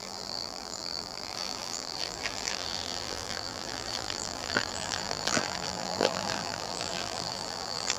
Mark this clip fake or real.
fake